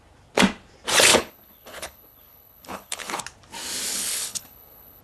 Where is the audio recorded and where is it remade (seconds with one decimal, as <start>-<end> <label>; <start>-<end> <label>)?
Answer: 0.0-1.1 recorded; 1.1-3.2 remade; 3.2-3.9 recorded; 3.9-5.0 remade